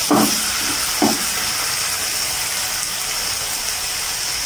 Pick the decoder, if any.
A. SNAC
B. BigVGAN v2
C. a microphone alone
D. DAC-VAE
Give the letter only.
C